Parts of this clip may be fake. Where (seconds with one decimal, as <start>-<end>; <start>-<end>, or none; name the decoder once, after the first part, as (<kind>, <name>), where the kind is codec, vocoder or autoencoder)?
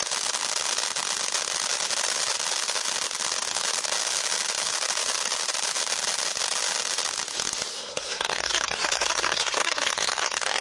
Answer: 7.7-10.6 (codec, SNAC)